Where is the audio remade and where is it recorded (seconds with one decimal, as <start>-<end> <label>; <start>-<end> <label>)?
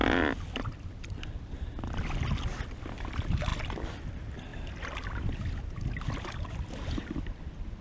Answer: 0.0-7.8 recorded